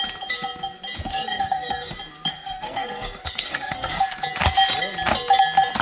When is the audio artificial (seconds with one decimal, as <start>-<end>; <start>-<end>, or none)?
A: 1.1-1.9; 2.3-4.0